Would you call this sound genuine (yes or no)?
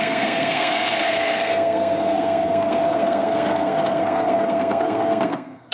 no